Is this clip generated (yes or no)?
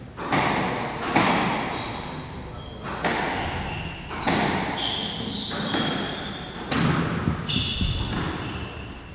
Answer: no